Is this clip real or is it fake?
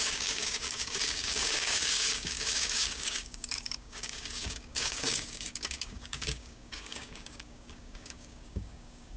fake